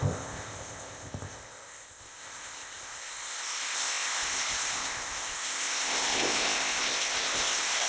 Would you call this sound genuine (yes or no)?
no